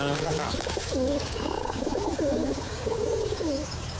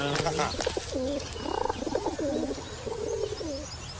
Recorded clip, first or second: second